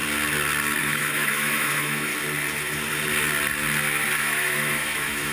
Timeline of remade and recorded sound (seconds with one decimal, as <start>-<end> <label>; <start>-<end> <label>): 0.0-0.8 recorded; 0.8-2.1 remade; 2.1-4.2 recorded; 4.2-5.3 remade